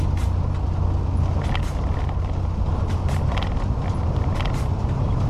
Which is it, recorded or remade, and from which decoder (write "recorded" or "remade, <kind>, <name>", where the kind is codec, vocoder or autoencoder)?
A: recorded